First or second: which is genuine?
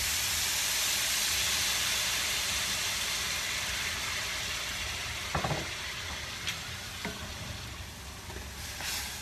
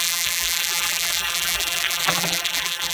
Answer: first